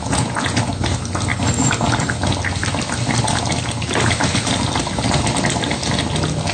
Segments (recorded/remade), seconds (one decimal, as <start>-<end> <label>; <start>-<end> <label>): 0.0-0.7 remade; 0.7-6.5 recorded